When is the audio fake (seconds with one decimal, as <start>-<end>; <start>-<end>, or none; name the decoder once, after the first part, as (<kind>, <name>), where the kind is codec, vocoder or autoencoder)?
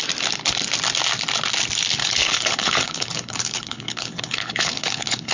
2.0-5.3 (codec, HILCodec)